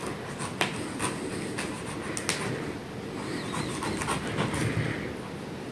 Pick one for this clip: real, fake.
real